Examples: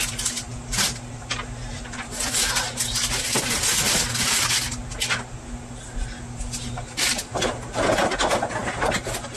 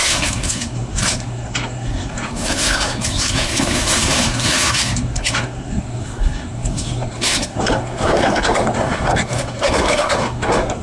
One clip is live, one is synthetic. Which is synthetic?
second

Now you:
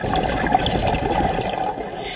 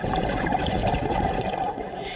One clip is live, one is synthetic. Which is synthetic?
second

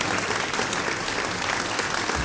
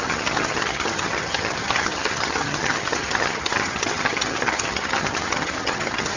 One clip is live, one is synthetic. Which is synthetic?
second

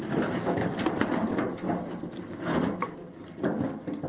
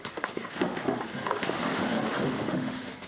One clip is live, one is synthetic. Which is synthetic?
second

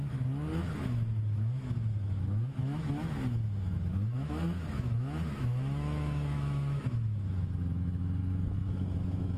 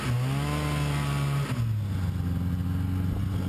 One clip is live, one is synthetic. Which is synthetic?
first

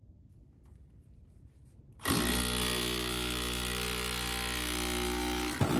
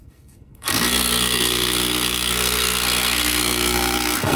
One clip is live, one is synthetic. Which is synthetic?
second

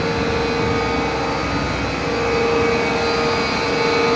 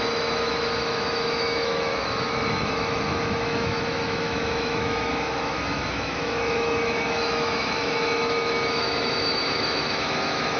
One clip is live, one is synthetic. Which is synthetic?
second